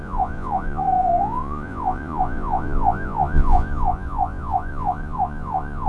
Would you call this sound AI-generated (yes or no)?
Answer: yes